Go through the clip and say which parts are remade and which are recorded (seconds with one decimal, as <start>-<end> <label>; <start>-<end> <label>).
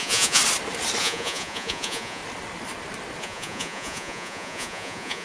0.0-0.4 remade; 0.4-1.0 recorded; 1.0-2.2 remade; 2.2-3.2 recorded; 3.2-5.2 remade